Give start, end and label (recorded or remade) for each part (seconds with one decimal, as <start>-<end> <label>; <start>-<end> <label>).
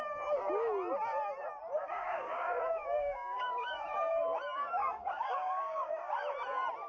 0.0-1.8 recorded; 1.8-3.8 remade; 3.8-4.8 recorded; 4.8-5.9 remade; 5.9-6.9 recorded